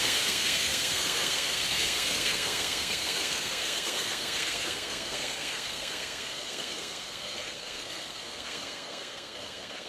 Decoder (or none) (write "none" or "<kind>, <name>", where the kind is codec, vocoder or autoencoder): codec, SNAC